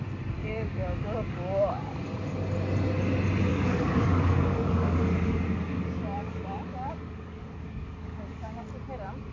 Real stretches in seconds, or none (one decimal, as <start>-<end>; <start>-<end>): 0.0-0.4; 2.0-3.5; 8.7-9.3